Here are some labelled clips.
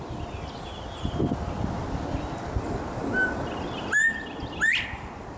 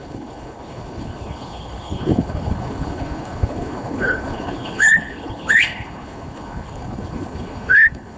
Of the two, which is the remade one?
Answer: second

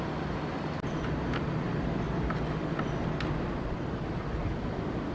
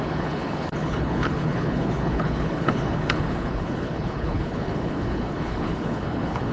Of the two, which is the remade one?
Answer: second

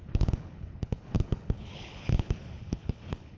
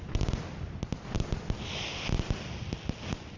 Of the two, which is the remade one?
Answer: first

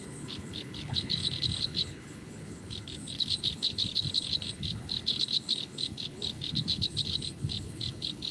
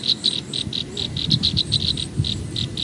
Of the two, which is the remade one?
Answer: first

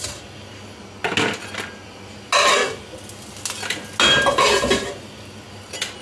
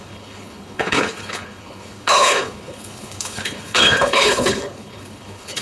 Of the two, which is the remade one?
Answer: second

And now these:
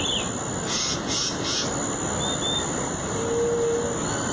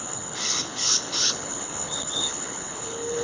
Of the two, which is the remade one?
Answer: second